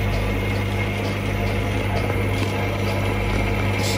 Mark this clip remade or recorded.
recorded